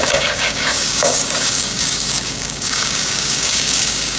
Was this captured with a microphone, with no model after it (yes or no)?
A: no